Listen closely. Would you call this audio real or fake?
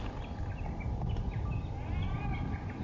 real